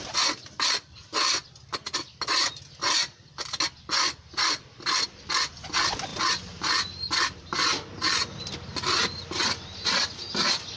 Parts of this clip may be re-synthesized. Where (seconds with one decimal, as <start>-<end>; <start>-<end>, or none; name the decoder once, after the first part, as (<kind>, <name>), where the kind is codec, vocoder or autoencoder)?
none